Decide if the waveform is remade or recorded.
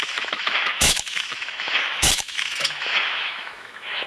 remade